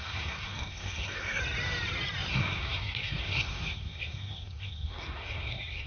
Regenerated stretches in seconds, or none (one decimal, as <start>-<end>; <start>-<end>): 0.0-1.4; 2.3-5.9

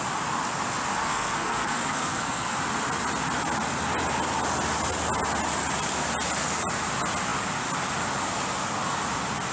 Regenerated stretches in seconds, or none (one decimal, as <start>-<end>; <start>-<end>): 1.0-2.6

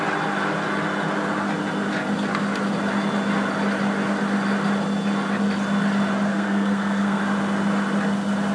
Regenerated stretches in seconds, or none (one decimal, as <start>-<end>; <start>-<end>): 6.3-7.2